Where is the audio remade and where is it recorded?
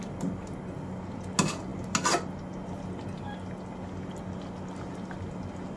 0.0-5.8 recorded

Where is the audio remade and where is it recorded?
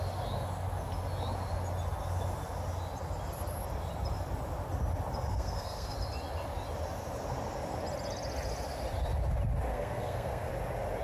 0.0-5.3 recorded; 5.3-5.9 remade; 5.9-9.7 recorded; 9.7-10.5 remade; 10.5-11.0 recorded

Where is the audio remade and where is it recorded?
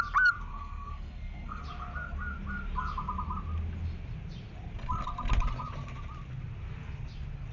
0.0-0.5 recorded; 0.5-1.6 remade; 1.6-7.5 recorded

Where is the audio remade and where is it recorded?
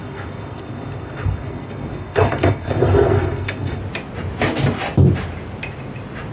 0.0-3.8 remade; 3.8-6.3 recorded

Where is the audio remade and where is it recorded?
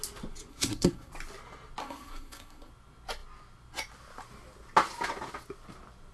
0.0-0.5 recorded; 0.5-1.1 remade; 1.1-1.8 recorded; 1.8-2.7 remade; 2.7-6.1 recorded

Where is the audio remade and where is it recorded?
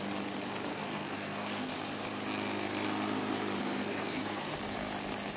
0.0-0.7 recorded; 0.7-1.7 remade; 1.7-3.6 recorded; 3.6-4.5 remade; 4.5-5.4 recorded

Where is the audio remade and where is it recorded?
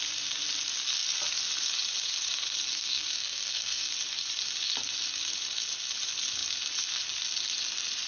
0.0-2.7 recorded; 2.7-3.9 remade; 3.9-8.1 recorded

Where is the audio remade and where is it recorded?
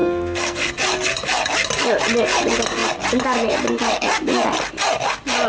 0.0-0.7 remade; 0.7-5.5 recorded